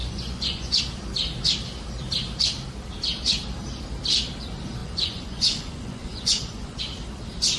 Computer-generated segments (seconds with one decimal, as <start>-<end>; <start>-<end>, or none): 0.0-0.8; 4.8-6.8